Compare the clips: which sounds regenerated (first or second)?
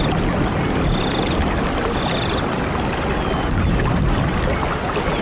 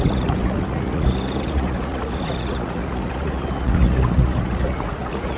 second